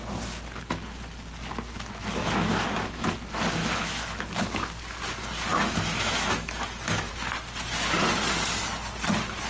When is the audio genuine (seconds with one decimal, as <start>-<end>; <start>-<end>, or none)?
0.0-2.2; 3.1-3.6; 4.3-5.5; 7.1-9.5